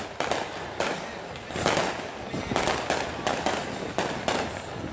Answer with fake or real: real